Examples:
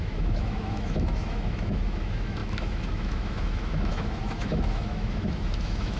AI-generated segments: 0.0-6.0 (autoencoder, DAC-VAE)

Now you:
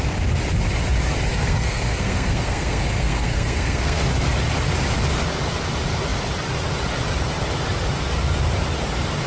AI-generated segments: 1.3-4.0 (codec, SNAC)

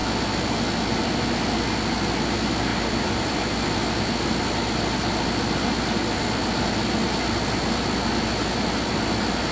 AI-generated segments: 2.7-3.4 (vocoder, BigVGAN v2)

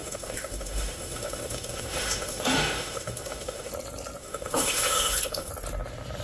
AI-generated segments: 0.0-3.7 (autoencoder, DAC-VAE); 4.2-5.5

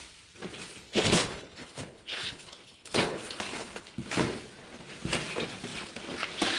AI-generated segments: 0.9-3.9 (codec, HILCodec)